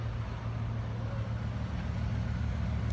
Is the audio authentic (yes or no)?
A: yes